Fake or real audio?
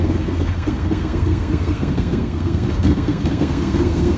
fake